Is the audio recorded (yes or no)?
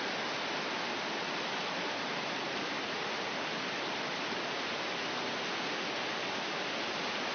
yes